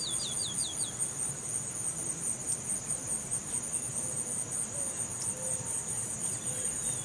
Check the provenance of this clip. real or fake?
real